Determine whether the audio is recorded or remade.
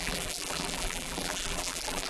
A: remade